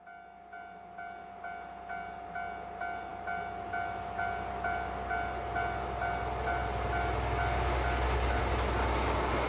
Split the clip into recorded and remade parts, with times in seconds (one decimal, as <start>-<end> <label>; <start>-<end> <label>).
0.0-9.5 recorded